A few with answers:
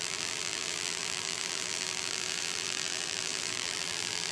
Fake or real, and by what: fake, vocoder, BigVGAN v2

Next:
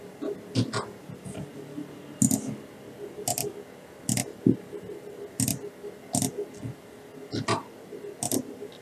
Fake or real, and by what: real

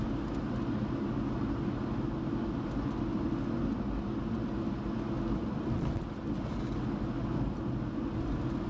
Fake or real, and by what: real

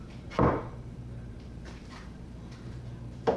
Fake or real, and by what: fake, vocoder, BigVGAN v2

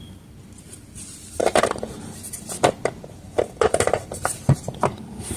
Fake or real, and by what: fake, vocoder, BigVGAN v2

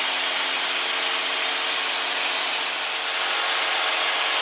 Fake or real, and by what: real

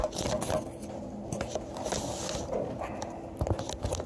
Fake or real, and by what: real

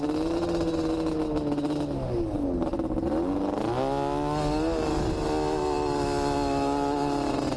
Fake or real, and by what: real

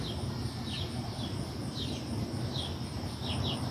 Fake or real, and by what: real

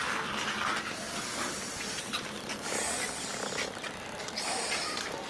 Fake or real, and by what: real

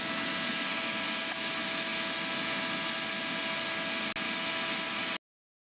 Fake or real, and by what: real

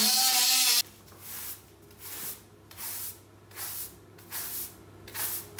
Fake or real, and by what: real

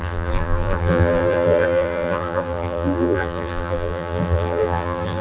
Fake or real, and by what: fake, vocoder, BigVGAN v2